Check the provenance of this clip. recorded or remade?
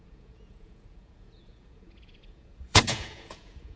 remade